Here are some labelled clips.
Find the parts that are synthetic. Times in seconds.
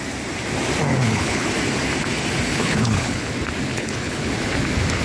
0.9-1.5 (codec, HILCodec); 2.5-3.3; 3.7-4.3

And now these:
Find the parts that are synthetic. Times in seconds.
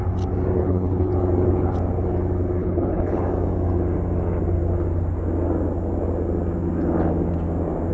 0.6-1.1 (codec, HILCodec); 2.6-3.2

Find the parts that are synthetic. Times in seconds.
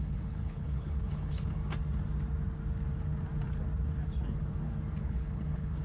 0.0-1.6 (codec, HILCodec); 5.0-5.8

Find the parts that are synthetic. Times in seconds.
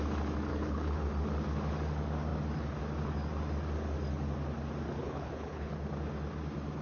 0.5-1.1 (codec, HILCodec); 5.0-5.7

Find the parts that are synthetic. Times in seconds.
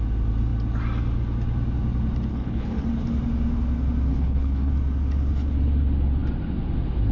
2.3-2.8 (codec, HILCodec); 4.1-4.7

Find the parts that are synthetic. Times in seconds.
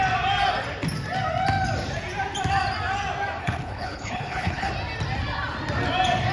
3.4-4.7 (codec, HILCodec)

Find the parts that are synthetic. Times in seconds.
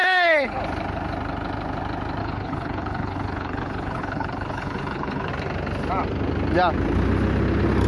0.0-0.6 (codec, HILCodec); 2.2-5.3